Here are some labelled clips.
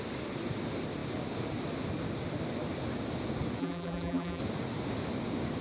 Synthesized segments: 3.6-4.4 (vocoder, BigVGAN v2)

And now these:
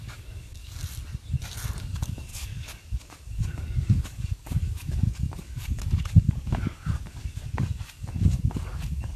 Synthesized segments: 0.0-0.8 (codec, DAC); 1.8-9.2

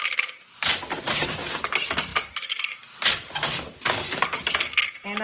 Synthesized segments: none

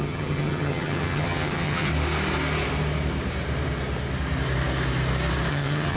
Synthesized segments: 0.0-1.9 (vocoder, HiFi-GAN); 5.5-6.0

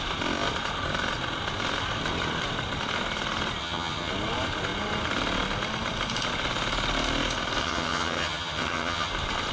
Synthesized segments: 3.6-4.1 (vocoder, HiFi-GAN); 7.6-9.1

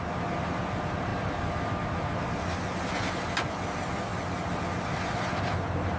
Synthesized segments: none

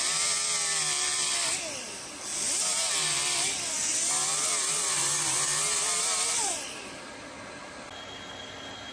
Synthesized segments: 4.3-6.5 (vocoder, BigVGAN v2)